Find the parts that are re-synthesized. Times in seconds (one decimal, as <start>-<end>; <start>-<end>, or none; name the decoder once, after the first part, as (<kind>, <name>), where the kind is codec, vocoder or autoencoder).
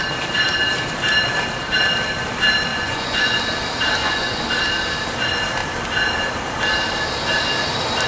2.7-3.4 (vocoder, Vocos); 4.0-4.5